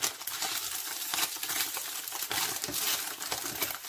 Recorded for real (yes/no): yes